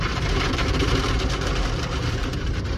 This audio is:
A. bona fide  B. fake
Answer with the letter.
B